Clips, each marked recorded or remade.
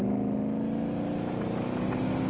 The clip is recorded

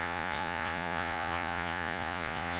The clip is remade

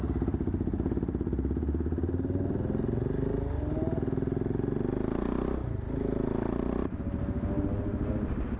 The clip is recorded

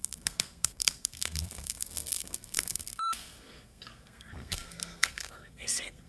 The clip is remade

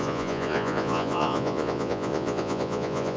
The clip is remade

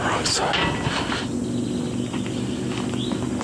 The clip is recorded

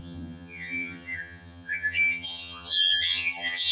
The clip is remade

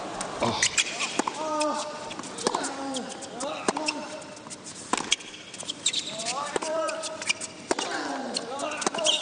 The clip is recorded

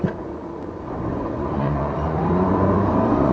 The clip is remade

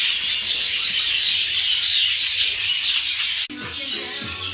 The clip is recorded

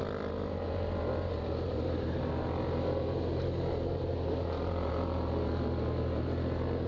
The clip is recorded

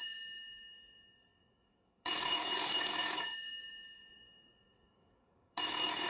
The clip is remade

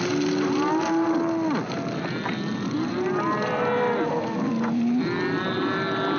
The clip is recorded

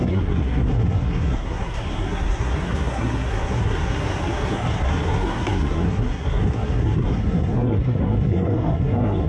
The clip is remade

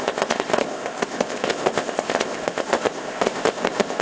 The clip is remade